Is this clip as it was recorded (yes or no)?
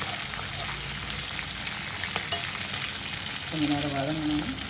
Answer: yes